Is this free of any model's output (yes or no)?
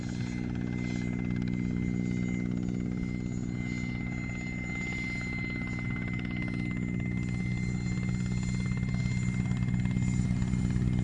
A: yes